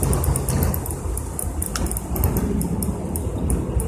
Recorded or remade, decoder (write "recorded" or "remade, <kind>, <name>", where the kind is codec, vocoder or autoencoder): recorded